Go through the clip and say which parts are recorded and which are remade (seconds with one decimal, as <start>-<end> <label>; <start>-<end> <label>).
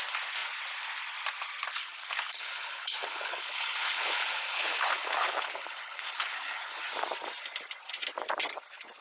0.0-1.8 recorded; 1.8-6.8 remade; 6.8-9.0 recorded